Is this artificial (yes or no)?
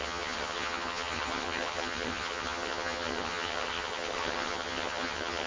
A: yes